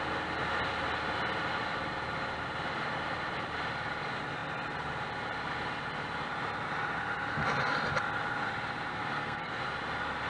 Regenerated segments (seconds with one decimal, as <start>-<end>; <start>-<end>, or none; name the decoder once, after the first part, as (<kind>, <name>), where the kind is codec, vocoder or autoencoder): 8.9-9.6 (codec, SNAC)